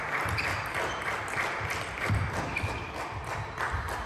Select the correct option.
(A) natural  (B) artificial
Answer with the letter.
A